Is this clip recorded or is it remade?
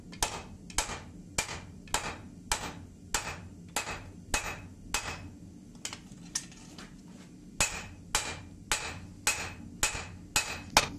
recorded